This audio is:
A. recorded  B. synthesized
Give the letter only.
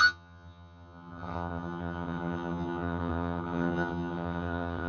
B